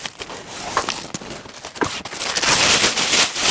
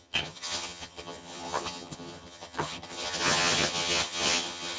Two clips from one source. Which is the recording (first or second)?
first